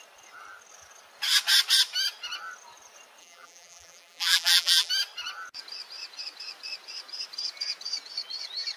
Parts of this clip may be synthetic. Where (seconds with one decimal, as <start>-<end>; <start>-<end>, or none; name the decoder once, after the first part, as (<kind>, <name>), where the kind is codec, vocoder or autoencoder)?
3.2-4.9 (vocoder, BigVGAN v2)